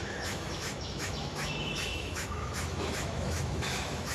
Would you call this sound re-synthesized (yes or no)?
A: yes